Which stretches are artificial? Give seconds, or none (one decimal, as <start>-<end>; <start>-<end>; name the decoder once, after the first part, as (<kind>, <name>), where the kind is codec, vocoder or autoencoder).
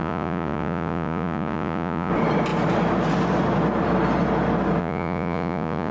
0.0-2.1 (vocoder, Vocos); 4.8-5.9